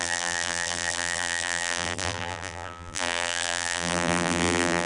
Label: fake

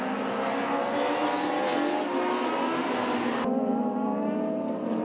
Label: real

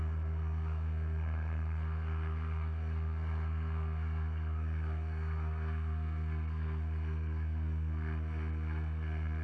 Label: fake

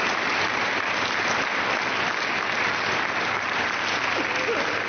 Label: real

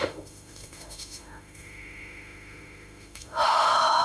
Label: fake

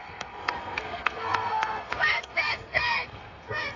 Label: fake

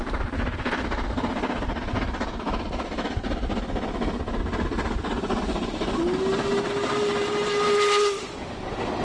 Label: real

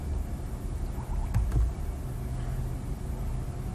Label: real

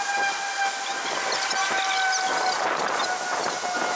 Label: real